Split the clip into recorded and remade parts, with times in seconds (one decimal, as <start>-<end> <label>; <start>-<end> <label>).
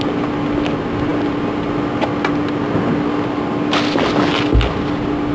0.0-5.3 recorded